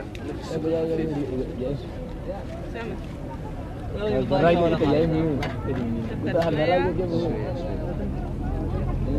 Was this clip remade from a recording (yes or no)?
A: no